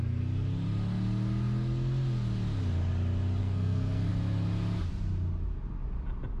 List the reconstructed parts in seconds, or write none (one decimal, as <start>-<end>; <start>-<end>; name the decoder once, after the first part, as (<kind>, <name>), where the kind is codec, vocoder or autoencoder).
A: 3.4-4.1 (codec, SNAC)